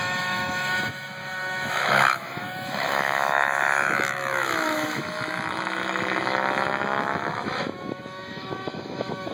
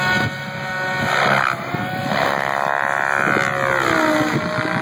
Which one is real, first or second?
second